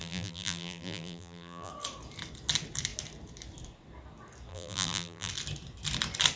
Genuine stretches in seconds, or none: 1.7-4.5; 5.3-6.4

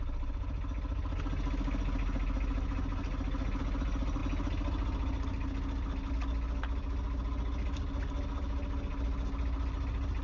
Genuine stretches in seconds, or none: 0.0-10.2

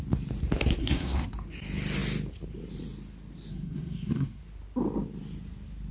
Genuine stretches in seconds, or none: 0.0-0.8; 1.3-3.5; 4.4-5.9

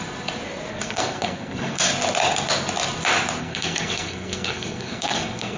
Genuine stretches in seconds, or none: 0.0-0.7; 1.8-3.4

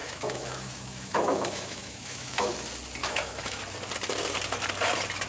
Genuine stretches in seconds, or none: 2.5-3.0; 3.6-5.3